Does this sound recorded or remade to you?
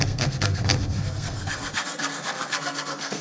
remade